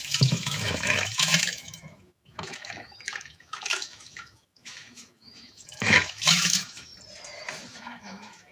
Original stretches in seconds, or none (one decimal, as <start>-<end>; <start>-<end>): 6.9-7.7